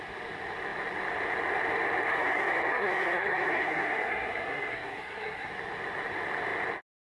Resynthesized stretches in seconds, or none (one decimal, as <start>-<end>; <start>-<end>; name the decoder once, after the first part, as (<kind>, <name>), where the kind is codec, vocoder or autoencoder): 2.1-5.5 (codec, SNAC)